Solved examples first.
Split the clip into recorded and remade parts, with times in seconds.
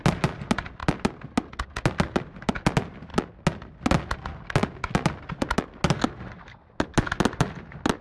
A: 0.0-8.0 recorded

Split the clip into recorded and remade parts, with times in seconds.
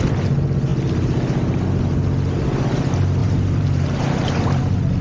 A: 0.0-3.2 recorded; 3.2-4.6 remade; 4.6-5.0 recorded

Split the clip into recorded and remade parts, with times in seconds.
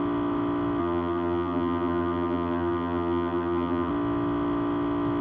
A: 0.0-0.8 recorded; 0.8-3.9 remade; 3.9-5.2 recorded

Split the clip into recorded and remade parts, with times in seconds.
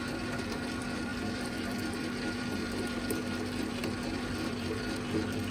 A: 0.0-3.8 remade; 3.8-4.3 recorded; 4.3-5.5 remade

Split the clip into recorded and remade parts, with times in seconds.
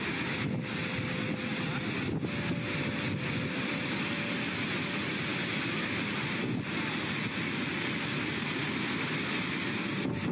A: 0.0-8.1 recorded; 8.1-8.9 remade; 8.9-10.3 recorded